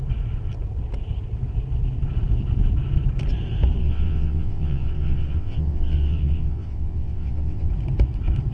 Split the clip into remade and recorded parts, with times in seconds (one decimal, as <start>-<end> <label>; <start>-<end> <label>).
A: 0.0-3.8 recorded; 3.8-7.7 remade; 7.7-8.5 recorded